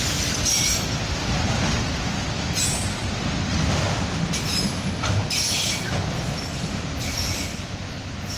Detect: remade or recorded recorded